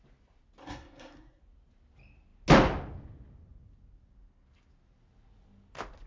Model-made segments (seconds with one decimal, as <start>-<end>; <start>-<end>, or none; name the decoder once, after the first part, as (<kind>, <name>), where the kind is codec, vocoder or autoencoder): 0.6-1.4 (codec, SNAC)